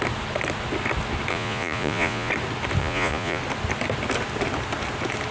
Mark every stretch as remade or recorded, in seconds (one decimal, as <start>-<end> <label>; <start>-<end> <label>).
0.0-1.3 recorded; 1.3-2.3 remade; 2.3-2.8 recorded; 2.8-3.4 remade; 3.4-5.3 recorded